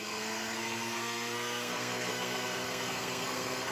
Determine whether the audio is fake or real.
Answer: fake